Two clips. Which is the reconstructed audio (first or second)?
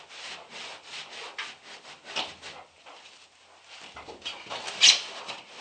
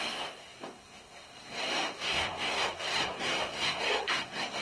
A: second